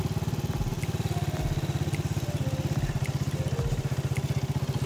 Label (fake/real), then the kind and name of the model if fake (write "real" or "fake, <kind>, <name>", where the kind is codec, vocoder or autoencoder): fake, vocoder, BigVGAN v2